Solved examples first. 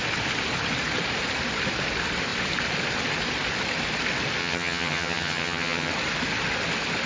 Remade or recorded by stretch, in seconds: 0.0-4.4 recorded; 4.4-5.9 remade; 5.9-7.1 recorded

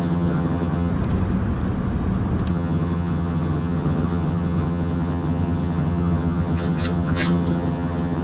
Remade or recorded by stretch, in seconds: 0.0-0.9 remade; 0.9-2.5 recorded; 2.5-8.2 remade

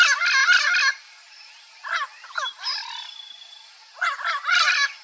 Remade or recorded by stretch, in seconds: 0.0-5.0 recorded

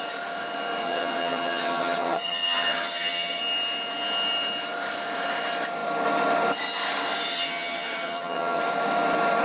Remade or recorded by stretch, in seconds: 0.0-0.8 recorded; 0.8-3.4 remade; 3.4-7.3 recorded; 7.3-8.6 remade; 8.6-9.4 recorded

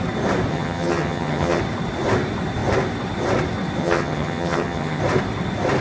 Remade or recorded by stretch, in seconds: 0.0-0.5 recorded; 0.5-1.6 remade; 1.6-3.8 recorded; 3.8-5.0 remade; 5.0-5.8 recorded

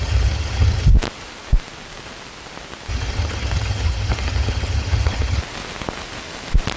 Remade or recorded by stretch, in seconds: 0.0-0.9 remade; 0.9-2.9 recorded; 2.9-5.4 remade; 5.4-6.8 recorded